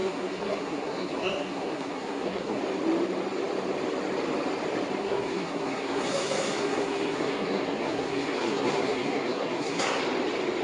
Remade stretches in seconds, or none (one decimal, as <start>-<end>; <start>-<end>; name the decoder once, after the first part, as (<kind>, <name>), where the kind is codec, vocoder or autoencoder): 0.0-2.6 (codec, SNAC); 5.0-10.0

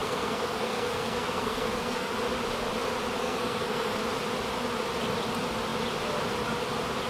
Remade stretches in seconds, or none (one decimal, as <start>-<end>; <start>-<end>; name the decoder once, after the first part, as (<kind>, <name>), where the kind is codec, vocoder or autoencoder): 0.0-2.1 (codec, SNAC); 3.2-4.0

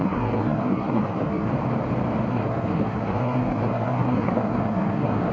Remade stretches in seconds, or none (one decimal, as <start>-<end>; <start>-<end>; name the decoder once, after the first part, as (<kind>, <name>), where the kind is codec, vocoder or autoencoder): 0.0-1.5 (codec, SNAC); 2.3-5.3

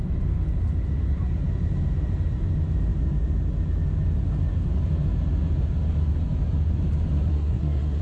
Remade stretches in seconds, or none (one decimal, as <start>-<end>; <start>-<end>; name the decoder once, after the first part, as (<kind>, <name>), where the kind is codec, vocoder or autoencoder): 7.3-8.0 (codec, SNAC)

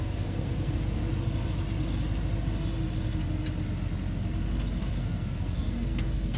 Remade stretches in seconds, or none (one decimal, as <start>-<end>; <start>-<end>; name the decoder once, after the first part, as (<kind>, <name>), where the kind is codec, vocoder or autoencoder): 0.0-1.0 (codec, SNAC); 4.8-6.4

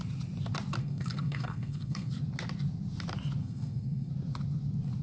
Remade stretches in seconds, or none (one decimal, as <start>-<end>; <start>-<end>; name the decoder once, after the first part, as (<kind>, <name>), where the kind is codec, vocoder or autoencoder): 0.8-2.1 (codec, SNAC); 3.4-4.1

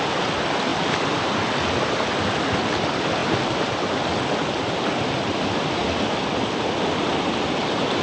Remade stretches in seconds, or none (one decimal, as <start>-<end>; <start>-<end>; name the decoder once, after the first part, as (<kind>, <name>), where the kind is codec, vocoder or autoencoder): none